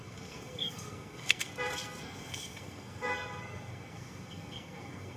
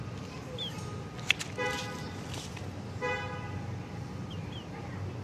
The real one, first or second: second